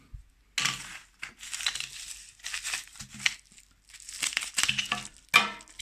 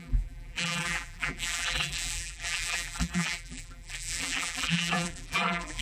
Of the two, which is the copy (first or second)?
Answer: second